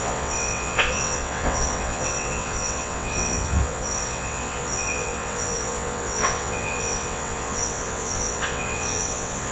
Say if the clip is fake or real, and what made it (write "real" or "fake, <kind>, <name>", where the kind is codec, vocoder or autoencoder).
fake, vocoder, WaveNeXt